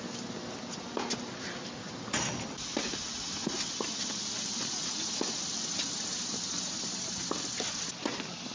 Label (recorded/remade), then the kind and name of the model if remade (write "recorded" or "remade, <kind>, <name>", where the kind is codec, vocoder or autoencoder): recorded